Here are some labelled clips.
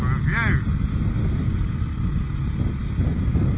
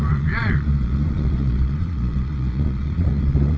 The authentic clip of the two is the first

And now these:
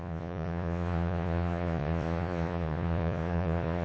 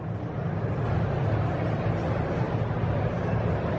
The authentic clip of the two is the second